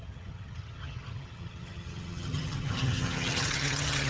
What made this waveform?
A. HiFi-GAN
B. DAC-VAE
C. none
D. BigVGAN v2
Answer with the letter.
A